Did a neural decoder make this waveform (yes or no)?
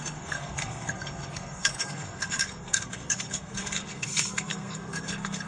yes